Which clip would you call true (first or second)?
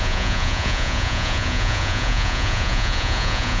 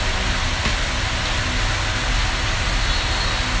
second